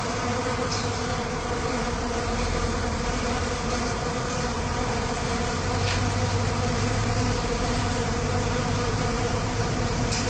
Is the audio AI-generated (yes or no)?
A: yes